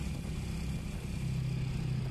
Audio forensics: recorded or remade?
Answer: recorded